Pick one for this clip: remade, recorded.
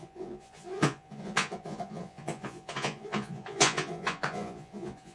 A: remade